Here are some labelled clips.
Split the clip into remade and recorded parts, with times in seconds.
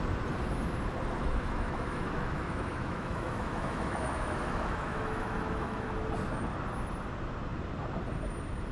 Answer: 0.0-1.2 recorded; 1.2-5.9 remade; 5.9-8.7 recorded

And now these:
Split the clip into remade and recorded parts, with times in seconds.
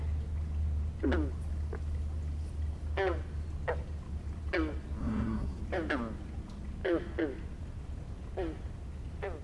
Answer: 0.0-5.0 recorded; 5.0-5.6 remade; 5.6-9.4 recorded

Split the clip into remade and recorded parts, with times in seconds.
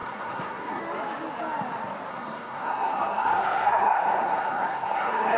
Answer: 0.0-0.8 remade; 0.8-2.1 recorded; 2.1-5.4 remade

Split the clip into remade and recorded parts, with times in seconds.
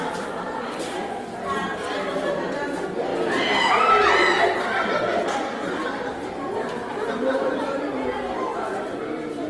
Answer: 0.0-7.3 recorded; 7.3-8.8 remade; 8.8-9.5 recorded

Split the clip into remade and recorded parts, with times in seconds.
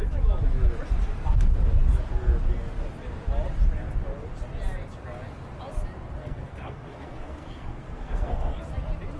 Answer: 0.0-6.2 recorded; 6.2-8.6 remade; 8.6-9.2 recorded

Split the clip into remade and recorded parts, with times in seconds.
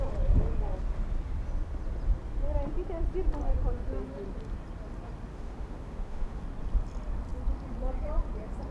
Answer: 0.0-5.3 recorded; 5.3-6.4 remade; 6.4-8.7 recorded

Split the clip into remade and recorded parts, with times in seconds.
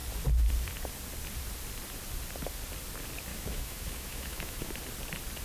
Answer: 0.0-3.3 recorded; 3.3-4.7 remade; 4.7-5.4 recorded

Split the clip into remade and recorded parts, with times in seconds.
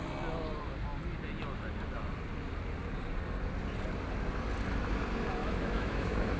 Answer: 0.0-5.4 recorded; 5.4-6.4 remade